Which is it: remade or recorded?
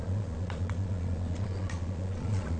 remade